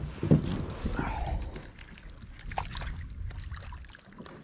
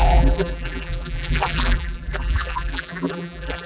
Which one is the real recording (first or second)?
first